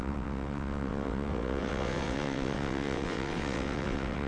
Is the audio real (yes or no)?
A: no